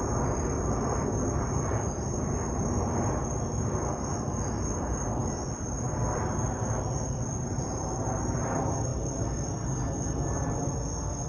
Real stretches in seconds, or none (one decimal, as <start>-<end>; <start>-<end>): 0.0-5.2; 7.3-8.9; 10.5-11.3